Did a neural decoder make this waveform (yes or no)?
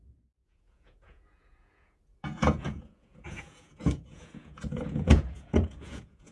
yes